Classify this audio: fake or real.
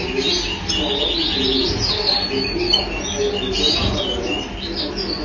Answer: real